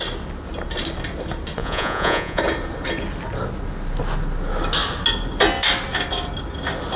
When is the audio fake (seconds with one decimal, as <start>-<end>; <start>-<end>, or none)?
1.6-2.4